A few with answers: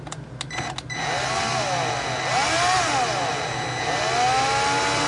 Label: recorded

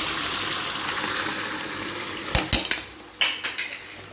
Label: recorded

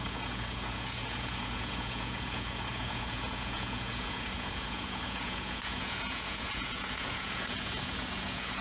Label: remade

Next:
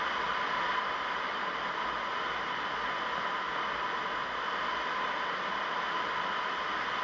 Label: recorded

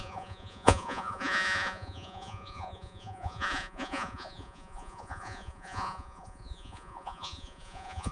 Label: remade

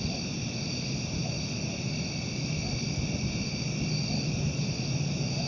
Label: recorded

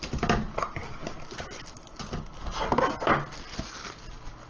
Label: recorded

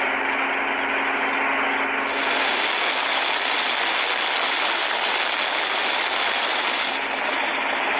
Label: recorded